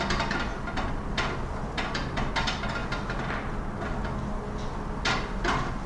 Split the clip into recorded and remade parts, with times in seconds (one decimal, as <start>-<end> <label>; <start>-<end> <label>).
0.0-5.9 recorded

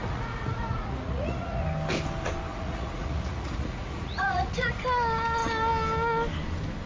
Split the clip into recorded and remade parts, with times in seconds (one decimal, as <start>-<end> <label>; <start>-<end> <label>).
0.0-1.6 remade; 1.6-2.5 recorded; 2.5-4.8 remade; 4.8-6.9 recorded

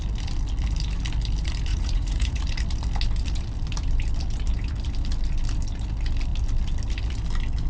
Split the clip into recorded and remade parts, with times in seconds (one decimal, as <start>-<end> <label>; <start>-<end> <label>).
0.0-1.7 recorded; 1.7-2.4 remade; 2.4-7.7 recorded

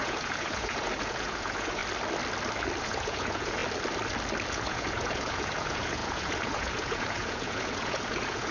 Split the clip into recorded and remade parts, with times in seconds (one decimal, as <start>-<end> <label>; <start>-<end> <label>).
0.0-1.8 remade; 1.8-2.8 recorded; 2.8-3.6 remade; 3.6-4.5 recorded; 4.5-8.5 remade

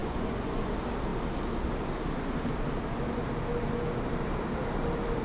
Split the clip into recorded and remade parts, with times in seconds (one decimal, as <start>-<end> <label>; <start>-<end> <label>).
0.0-0.7 remade; 0.7-5.2 recorded

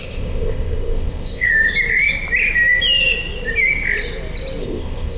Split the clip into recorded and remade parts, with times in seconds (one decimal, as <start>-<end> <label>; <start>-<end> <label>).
0.0-1.5 remade; 1.5-4.6 recorded; 4.6-5.2 remade